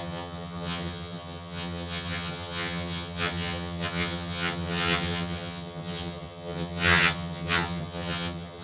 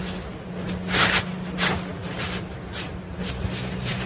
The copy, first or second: first